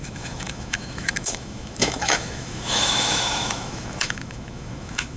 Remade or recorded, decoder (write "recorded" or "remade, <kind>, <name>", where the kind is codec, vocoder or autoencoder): remade, autoencoder, DAC-VAE